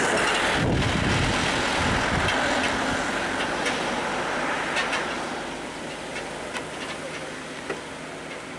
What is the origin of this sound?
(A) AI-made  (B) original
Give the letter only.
B